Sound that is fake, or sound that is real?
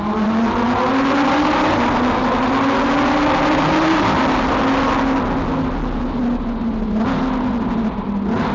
real